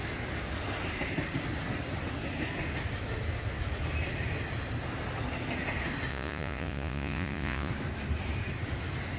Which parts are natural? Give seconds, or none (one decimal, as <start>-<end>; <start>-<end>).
0.0-6.1; 7.7-9.2